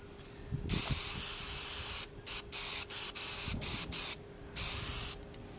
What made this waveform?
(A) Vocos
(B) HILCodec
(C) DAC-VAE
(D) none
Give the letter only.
D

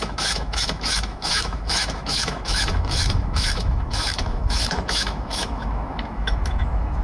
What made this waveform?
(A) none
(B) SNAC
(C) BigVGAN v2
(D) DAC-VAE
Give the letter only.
D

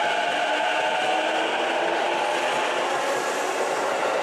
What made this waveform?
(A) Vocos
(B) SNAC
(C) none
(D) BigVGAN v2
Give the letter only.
C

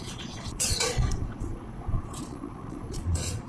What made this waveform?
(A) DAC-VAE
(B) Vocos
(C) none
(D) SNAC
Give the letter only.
B